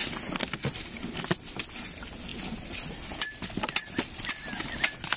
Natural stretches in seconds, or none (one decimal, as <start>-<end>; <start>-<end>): 0.0-2.3; 4.3-5.2